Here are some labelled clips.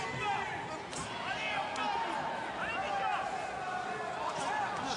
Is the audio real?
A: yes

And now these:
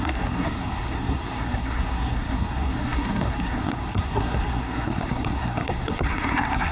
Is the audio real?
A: no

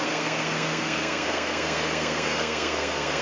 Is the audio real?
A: no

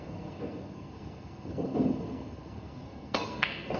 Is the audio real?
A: no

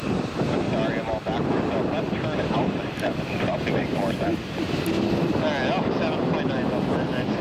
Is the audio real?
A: yes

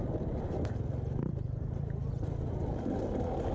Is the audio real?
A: yes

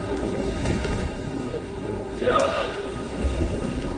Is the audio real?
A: no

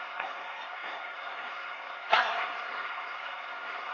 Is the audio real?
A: no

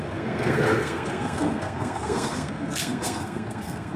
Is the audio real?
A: no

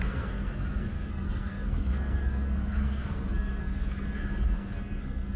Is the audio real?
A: no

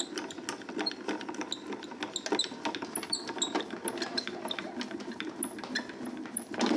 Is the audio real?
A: yes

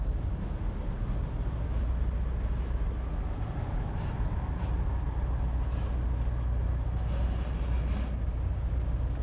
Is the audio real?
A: yes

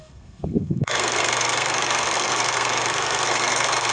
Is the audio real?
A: no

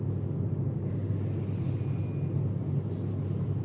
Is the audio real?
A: yes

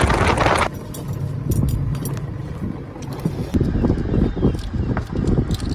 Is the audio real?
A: yes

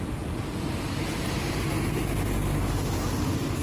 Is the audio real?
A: yes